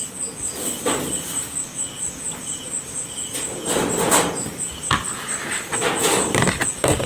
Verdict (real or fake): real